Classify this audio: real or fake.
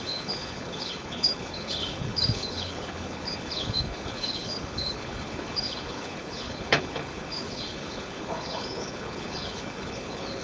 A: fake